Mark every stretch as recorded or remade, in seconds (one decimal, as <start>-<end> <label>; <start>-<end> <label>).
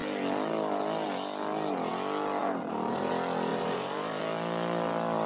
0.0-2.4 recorded; 2.4-3.1 remade; 3.1-3.5 recorded; 3.5-4.2 remade; 4.2-5.3 recorded